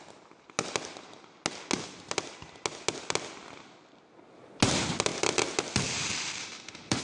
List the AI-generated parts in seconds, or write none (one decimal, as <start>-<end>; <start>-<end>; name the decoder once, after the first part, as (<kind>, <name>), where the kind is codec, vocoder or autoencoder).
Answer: 6.4-7.0 (autoencoder, DAC-VAE)